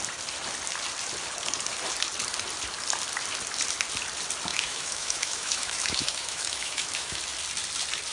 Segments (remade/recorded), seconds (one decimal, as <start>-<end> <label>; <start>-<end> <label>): 0.0-4.5 recorded; 4.5-7.2 remade; 7.2-8.1 recorded